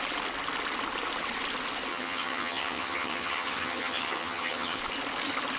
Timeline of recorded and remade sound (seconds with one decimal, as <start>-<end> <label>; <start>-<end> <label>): 0.0-1.9 recorded; 1.9-4.8 remade; 4.8-5.6 recorded